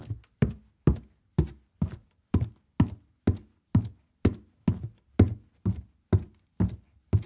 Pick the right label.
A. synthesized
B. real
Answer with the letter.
B